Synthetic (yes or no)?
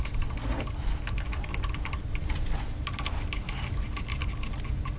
no